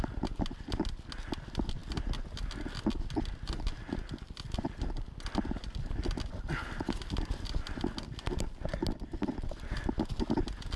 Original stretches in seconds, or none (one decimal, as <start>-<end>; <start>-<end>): 0.0-10.8